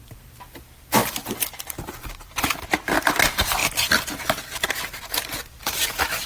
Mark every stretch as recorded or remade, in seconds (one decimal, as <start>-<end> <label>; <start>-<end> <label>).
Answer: 0.0-3.6 remade; 3.6-4.7 recorded; 4.7-6.3 remade